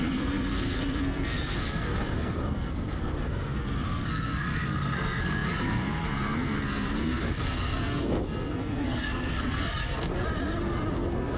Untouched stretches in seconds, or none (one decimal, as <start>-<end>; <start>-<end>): 10.1-10.9